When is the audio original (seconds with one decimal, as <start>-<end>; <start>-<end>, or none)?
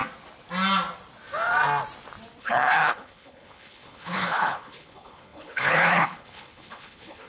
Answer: 0.0-2.4